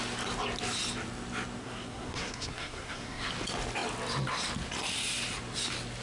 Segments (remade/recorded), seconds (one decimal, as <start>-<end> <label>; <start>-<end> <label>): 0.0-1.6 recorded; 1.6-3.3 remade; 3.3-6.0 recorded